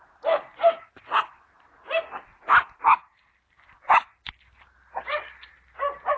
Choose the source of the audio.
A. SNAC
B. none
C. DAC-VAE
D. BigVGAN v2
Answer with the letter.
B